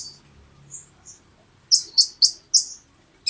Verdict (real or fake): real